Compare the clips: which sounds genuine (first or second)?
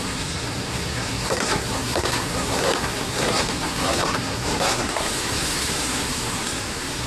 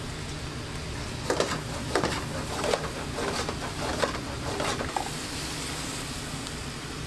second